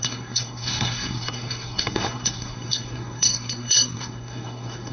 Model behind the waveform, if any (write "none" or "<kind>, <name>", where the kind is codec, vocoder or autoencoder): codec, SNAC